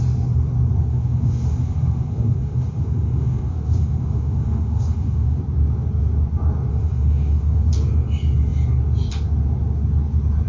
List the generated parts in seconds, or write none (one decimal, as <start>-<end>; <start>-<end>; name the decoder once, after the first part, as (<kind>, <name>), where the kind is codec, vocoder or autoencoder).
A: 0.9-5.4 (autoencoder, DAC-VAE); 6.7-7.7